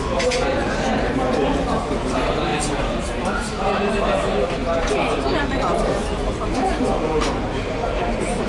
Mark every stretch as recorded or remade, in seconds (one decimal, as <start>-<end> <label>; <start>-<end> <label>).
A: 0.0-8.5 remade